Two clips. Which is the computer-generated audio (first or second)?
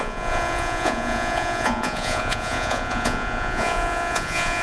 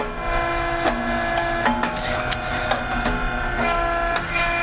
first